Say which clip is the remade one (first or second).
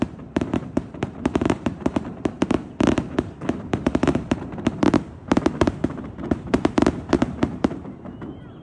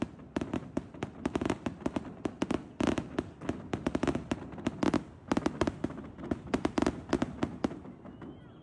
first